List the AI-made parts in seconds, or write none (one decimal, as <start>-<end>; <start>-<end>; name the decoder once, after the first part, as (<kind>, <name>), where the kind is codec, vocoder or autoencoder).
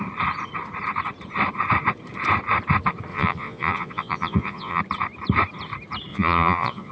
3.1-4.8 (vocoder, Vocos); 6.1-6.9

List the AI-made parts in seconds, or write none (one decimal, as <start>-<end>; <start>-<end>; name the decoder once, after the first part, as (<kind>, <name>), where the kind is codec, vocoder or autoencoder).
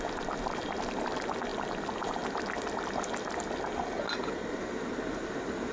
none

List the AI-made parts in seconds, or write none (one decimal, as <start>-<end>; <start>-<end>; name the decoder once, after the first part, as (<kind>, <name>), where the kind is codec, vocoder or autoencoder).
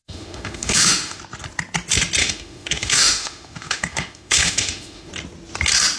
0.0-1.2 (autoencoder, DAC-VAE); 2.2-5.1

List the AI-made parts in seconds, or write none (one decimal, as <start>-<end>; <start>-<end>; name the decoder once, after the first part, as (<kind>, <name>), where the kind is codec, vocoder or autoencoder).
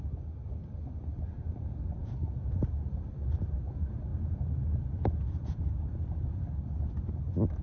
2.0-2.5 (vocoder, Vocos); 4.1-5.8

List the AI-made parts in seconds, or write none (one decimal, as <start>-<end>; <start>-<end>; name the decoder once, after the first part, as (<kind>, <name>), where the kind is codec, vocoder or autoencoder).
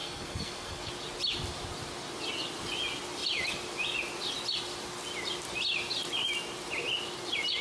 0.0-0.9 (codec, SNAC)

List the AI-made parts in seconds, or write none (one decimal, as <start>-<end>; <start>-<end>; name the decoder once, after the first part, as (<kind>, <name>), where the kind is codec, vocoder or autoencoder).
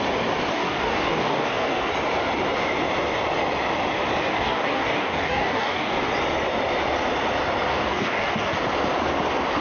0.5-1.9 (codec, DAC); 4.3-6.1; 7.7-8.6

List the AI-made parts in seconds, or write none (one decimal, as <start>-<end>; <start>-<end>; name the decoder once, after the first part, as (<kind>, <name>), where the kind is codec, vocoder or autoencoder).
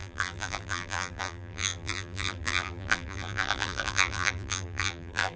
0.0-5.4 (vocoder, BigVGAN v2)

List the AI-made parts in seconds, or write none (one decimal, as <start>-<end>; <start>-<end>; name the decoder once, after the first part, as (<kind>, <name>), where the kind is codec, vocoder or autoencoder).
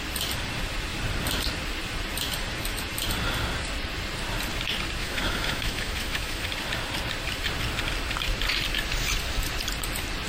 5.0-6.5 (autoencoder, DAC-VAE)